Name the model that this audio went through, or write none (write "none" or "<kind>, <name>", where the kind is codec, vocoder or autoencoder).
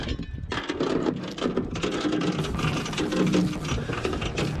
none